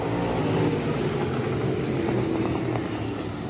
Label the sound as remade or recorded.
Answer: recorded